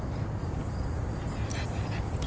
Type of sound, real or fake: real